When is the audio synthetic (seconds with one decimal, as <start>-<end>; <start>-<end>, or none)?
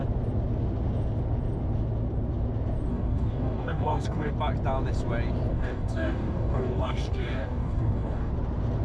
2.9-4.3; 5.5-8.3